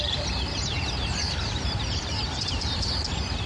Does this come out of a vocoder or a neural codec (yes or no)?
yes